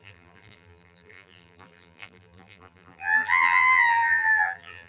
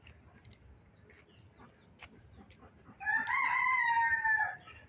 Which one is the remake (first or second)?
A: first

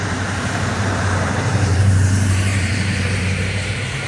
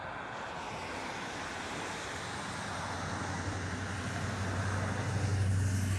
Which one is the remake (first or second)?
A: first